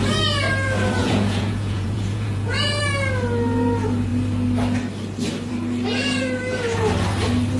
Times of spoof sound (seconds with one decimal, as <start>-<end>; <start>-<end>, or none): 1.0-2.8